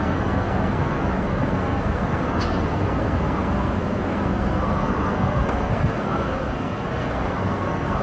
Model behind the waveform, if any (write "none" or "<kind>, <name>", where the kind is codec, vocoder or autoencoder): codec, SNAC